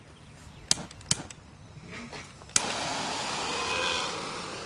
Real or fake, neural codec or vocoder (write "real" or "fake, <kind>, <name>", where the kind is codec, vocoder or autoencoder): real